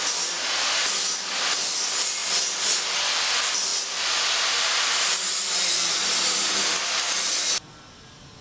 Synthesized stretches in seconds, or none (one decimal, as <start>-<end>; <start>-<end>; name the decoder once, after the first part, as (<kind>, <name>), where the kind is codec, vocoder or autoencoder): 2.2-2.8 (vocoder, BigVGAN v2); 3.7-8.4